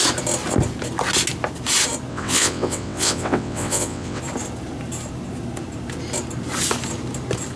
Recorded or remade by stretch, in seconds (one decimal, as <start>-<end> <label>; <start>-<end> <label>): 0.0-2.1 recorded; 2.1-4.2 remade; 4.2-7.6 recorded